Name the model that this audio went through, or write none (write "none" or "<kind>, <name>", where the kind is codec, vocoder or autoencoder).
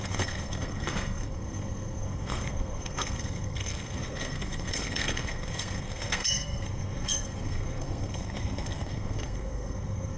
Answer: codec, SNAC